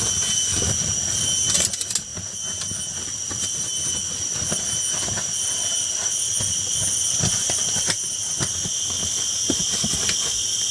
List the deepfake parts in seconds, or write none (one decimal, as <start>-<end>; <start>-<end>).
none